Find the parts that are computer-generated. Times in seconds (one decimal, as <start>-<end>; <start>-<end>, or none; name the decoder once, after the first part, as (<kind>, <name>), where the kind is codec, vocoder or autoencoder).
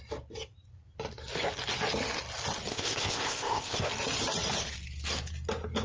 2.7-3.9 (codec, ZipCodec)